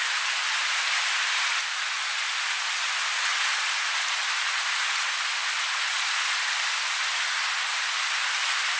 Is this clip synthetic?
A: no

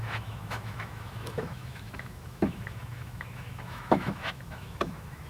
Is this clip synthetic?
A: yes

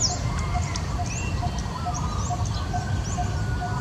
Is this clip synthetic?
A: no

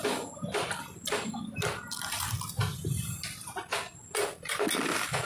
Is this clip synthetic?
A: no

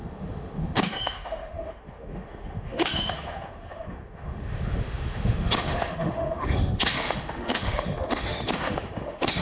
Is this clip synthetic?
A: yes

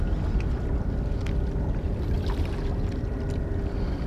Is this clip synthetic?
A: no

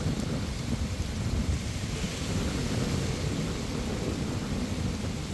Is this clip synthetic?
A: no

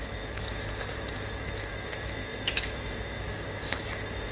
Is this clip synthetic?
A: yes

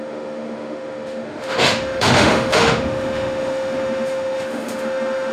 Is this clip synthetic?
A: yes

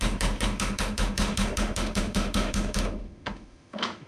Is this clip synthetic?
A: yes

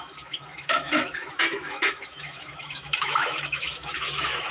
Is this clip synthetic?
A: yes